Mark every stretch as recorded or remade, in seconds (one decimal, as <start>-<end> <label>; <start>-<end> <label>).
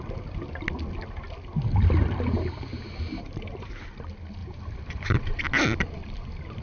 0.0-2.7 recorded; 2.7-3.7 remade; 3.7-4.4 recorded; 4.4-5.4 remade; 5.4-6.6 recorded